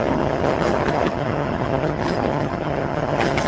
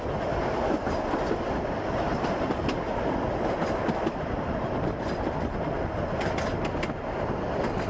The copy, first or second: first